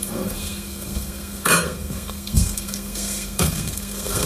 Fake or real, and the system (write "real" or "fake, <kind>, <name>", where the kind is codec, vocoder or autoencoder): fake, codec, SNAC